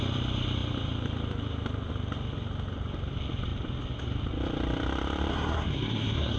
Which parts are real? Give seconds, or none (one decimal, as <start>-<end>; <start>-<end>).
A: 0.0-5.3